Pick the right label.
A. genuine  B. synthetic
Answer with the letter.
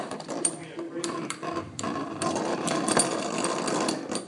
B